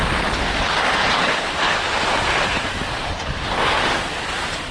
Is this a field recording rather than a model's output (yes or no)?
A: yes